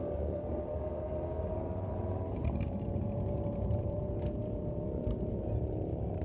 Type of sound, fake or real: fake